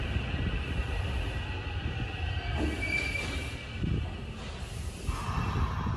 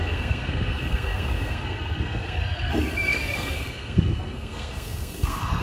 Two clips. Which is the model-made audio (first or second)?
second